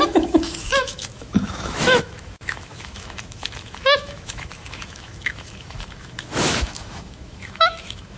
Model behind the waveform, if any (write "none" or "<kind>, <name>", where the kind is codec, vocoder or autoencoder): autoencoder, DAC-VAE